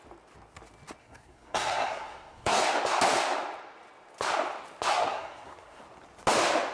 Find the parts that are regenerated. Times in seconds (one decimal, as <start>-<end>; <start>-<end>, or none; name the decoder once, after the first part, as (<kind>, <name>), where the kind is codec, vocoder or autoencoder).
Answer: 1.0-2.6 (codec, SNAC); 4.9-5.8